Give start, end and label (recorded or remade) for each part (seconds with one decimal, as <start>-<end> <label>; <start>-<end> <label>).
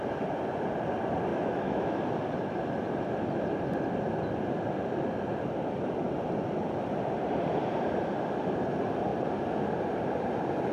0.0-1.3 recorded; 1.3-2.0 remade; 2.0-10.7 recorded